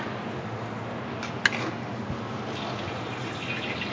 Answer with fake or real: real